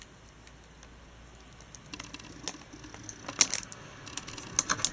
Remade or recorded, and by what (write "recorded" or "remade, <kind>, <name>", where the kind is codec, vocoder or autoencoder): recorded